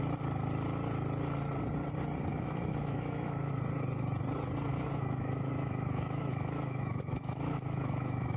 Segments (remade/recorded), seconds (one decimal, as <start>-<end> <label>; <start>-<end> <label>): 0.0-2.3 recorded; 2.3-3.5 remade; 3.5-4.7 recorded; 4.7-8.4 remade